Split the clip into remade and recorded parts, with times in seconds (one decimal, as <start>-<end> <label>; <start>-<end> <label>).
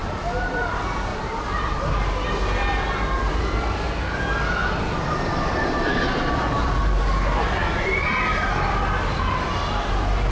0.0-1.1 recorded; 1.1-2.3 remade; 2.3-4.6 recorded; 4.6-6.8 remade; 6.8-10.3 recorded